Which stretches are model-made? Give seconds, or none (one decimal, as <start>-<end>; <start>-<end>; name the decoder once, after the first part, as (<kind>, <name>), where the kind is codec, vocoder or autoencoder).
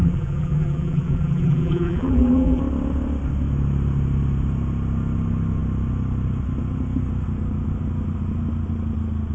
0.0-2.6 (vocoder, BigVGAN v2)